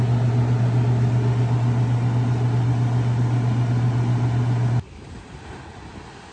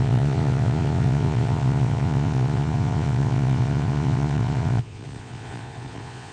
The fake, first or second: second